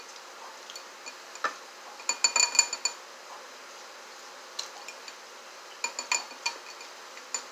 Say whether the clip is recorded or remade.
recorded